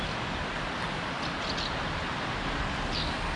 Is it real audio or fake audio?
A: real